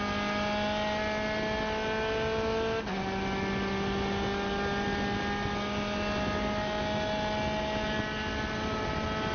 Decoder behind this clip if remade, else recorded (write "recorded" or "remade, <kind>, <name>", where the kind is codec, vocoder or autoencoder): recorded